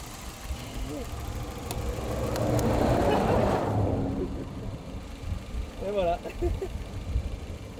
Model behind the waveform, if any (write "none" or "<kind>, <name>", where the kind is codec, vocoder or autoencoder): none